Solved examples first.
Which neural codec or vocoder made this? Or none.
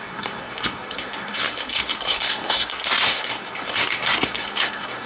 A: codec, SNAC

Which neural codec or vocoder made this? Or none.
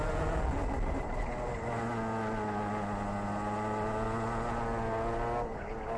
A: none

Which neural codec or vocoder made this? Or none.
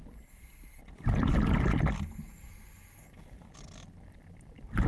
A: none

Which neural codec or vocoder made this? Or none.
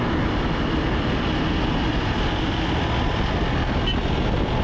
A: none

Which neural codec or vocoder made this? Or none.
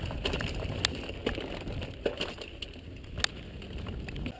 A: none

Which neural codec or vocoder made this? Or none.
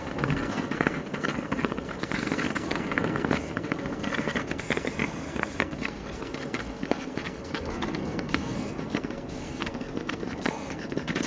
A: codec, SNAC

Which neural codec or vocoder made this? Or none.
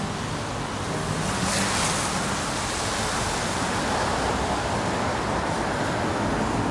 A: none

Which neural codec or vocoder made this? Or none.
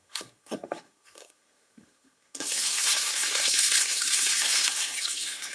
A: codec, SNAC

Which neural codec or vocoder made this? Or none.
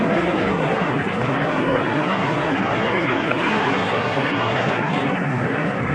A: codec, SNAC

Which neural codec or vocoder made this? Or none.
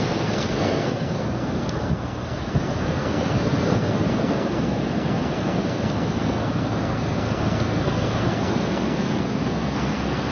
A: codec, SNAC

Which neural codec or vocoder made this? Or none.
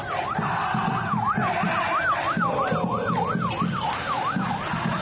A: none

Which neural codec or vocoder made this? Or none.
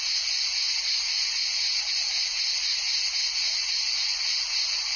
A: none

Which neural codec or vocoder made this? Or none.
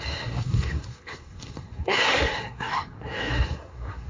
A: codec, SNAC